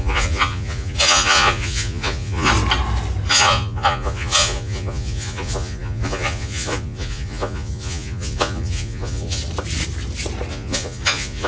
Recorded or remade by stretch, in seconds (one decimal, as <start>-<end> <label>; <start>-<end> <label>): 0.0-2.5 remade; 2.5-3.3 recorded; 3.3-9.4 remade; 9.4-10.5 recorded; 10.5-11.5 remade